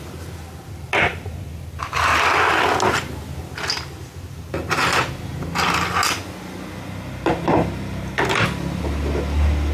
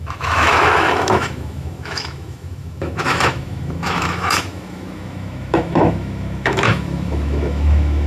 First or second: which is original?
first